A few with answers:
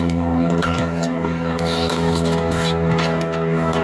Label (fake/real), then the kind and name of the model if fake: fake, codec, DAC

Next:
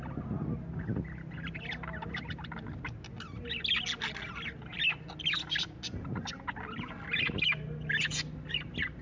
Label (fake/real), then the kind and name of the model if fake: real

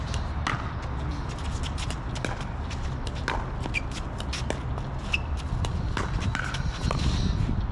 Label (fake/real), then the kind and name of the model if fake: real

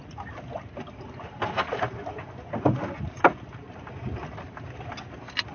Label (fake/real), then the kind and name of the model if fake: real